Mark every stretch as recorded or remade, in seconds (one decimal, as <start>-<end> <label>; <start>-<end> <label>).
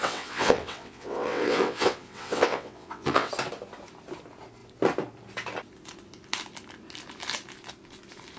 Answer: 0.0-3.3 remade; 3.3-8.4 recorded